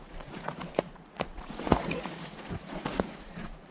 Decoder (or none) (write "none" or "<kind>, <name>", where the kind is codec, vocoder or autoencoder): vocoder, Vocos